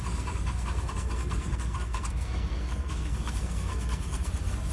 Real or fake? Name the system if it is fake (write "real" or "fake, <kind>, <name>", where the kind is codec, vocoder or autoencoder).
fake, codec, SNAC